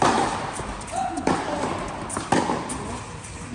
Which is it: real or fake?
real